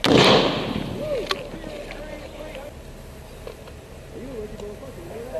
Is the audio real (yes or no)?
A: yes